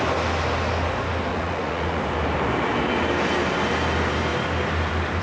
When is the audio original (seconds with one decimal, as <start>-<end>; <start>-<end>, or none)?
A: 0.0-1.3; 2.0-5.2